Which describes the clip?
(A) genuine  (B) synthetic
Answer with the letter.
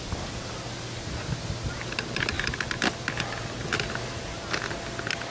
A